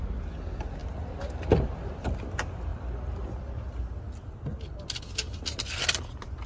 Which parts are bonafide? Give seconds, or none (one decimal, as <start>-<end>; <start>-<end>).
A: 0.0-6.5